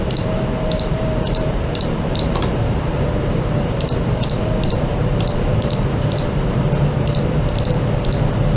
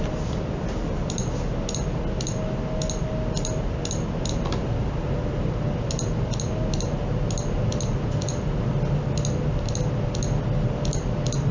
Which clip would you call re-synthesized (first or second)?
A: first